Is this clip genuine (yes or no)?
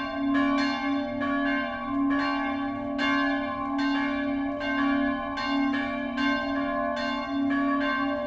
yes